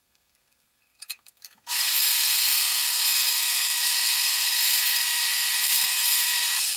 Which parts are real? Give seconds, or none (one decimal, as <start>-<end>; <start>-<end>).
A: none